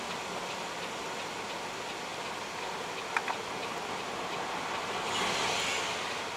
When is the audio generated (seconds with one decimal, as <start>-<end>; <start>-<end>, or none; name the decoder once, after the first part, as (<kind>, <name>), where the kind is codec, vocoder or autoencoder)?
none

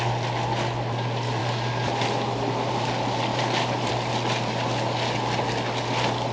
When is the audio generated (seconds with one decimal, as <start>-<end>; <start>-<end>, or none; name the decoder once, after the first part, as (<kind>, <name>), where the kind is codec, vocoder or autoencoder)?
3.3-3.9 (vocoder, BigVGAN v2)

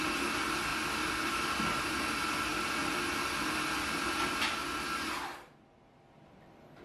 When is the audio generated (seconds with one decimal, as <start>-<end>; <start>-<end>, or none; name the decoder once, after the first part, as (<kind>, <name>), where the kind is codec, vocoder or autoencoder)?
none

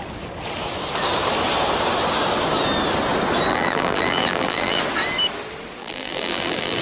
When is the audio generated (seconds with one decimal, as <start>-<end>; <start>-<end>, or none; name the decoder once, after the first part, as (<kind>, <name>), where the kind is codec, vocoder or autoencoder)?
3.5-4.8 (vocoder, BigVGAN v2); 5.8-6.8

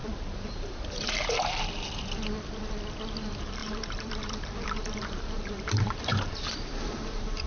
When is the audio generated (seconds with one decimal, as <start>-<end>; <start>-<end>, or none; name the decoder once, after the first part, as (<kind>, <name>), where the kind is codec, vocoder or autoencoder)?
0.0-1.7 (vocoder, BigVGAN v2); 3.6-7.5